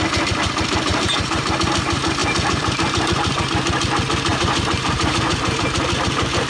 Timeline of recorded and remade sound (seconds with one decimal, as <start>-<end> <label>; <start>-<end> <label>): 0.0-0.9 recorded; 0.9-1.6 remade; 1.6-2.2 recorded; 2.2-3.4 remade; 3.4-4.3 recorded; 4.3-6.5 remade